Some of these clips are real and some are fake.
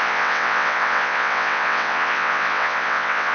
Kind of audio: fake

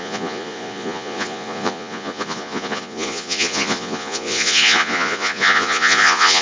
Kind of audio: fake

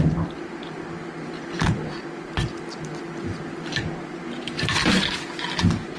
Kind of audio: real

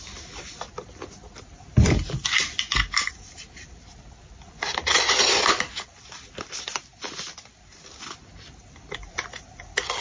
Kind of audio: real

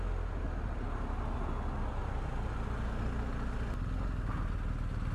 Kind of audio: real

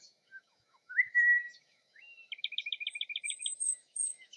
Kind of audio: fake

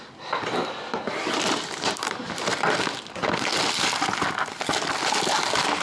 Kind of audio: real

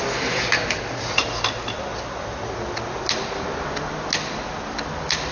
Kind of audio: real